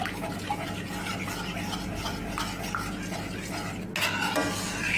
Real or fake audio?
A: real